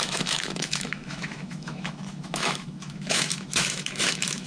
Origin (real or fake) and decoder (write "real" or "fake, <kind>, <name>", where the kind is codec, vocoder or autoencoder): fake, autoencoder, DAC-VAE